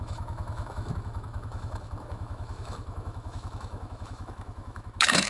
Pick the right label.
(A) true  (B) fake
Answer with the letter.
B